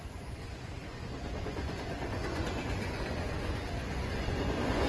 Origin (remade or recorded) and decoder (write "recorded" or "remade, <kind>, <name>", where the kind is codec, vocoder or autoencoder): remade, vocoder, Vocos